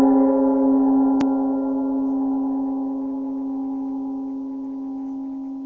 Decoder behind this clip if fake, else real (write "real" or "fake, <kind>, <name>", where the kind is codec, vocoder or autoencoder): real